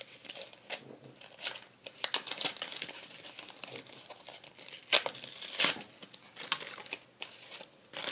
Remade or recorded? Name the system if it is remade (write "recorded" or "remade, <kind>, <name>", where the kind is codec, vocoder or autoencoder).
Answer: recorded